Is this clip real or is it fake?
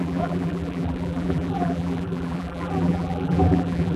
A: fake